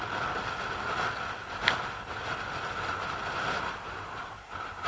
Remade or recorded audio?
recorded